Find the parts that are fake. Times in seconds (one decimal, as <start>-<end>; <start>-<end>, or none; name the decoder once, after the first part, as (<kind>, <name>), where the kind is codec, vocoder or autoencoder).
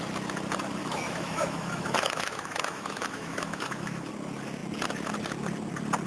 0.8-4.1 (autoencoder, DAC-VAE)